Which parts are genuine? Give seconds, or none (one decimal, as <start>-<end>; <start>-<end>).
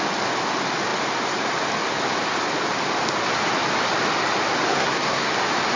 0.0-4.7; 5.3-5.8